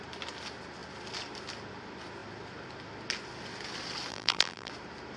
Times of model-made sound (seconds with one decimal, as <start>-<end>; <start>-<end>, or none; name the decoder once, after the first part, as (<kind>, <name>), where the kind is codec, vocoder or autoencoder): 4.1-4.7 (vocoder, BigVGAN v2)